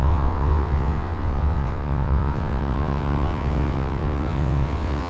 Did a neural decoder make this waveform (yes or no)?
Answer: yes